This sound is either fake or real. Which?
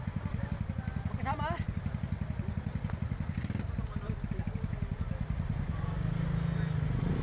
real